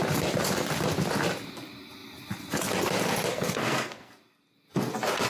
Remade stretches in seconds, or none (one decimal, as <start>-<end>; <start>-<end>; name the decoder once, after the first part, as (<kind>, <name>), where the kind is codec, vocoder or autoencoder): 3.3-4.1 (codec, SNAC)